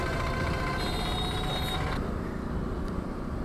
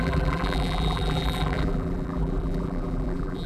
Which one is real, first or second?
first